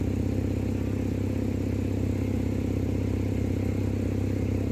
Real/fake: real